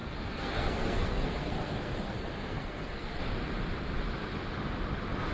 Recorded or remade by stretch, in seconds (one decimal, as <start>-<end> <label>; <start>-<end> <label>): 0.0-3.2 remade; 3.2-5.3 recorded